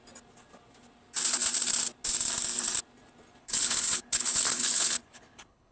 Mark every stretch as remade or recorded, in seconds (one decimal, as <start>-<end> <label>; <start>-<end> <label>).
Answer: 0.0-3.4 recorded; 3.4-5.7 remade